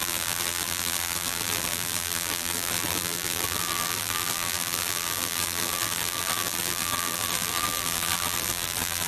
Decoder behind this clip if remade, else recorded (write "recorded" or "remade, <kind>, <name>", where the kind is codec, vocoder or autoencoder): remade, vocoder, BigVGAN v2